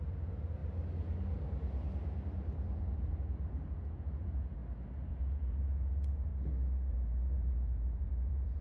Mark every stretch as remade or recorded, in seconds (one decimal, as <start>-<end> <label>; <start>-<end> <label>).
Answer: 0.0-0.6 remade; 0.6-2.8 recorded; 2.8-4.6 remade; 4.6-5.1 recorded; 5.1-6.3 remade; 6.3-6.9 recorded; 6.9-8.6 remade